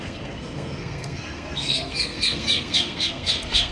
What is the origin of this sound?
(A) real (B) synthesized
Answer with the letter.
B